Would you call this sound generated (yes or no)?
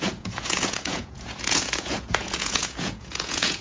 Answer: yes